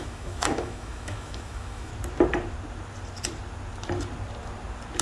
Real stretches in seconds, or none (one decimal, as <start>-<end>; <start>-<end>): 1.9-5.0